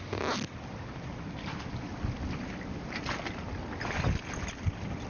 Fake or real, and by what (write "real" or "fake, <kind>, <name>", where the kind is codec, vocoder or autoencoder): real